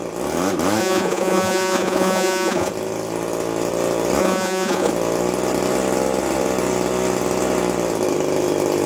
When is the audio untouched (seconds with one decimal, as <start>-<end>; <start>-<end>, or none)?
0.0-0.8; 2.7-4.2; 4.9-8.9